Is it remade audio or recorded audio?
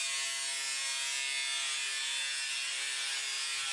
recorded